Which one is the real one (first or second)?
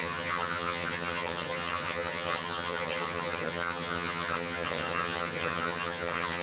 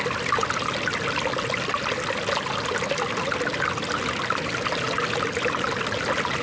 second